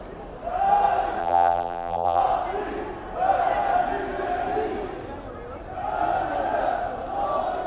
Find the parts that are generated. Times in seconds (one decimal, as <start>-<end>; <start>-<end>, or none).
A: 1.2-2.2